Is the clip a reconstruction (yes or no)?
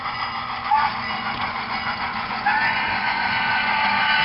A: yes